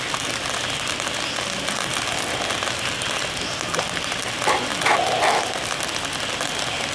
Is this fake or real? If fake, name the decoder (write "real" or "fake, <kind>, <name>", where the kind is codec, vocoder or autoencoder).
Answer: real